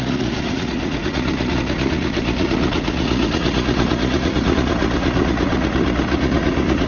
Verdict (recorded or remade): remade